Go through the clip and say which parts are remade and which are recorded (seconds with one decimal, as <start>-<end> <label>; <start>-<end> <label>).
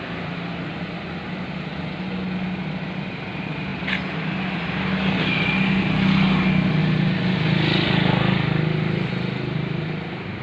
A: 0.0-10.4 recorded